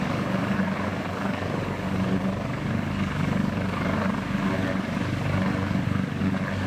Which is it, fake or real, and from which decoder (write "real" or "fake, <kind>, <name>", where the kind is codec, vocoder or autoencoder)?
fake, codec, DAC